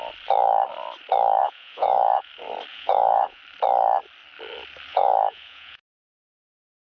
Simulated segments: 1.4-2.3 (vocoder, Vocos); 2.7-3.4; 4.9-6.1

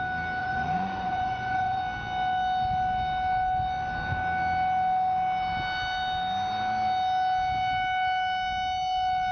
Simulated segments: 0.4-1.8 (vocoder, Vocos)

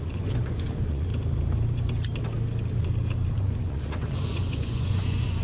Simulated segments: 0.0-1.1 (vocoder, Vocos); 3.3-5.4

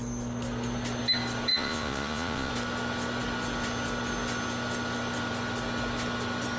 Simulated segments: 1.5-2.5 (vocoder, Vocos)

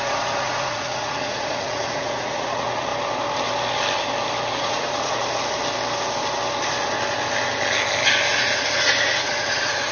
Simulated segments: 0.0-2.9 (vocoder, Vocos); 4.5-5.2; 8.4-9.9

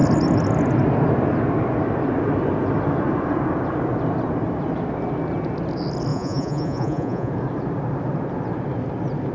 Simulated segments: 6.1-7.3 (vocoder, Vocos)

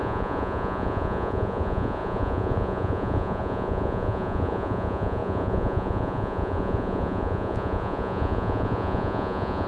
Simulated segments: 0.0-9.7 (vocoder, Vocos)

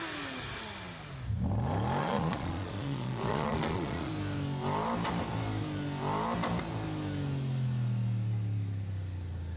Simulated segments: 2.0-4.1 (vocoder, Vocos)